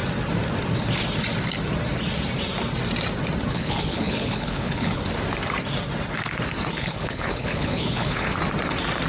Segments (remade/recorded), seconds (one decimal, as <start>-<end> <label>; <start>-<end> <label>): 0.0-3.5 recorded; 3.5-5.0 remade; 5.0-6.8 recorded; 6.8-8.3 remade; 8.3-9.1 recorded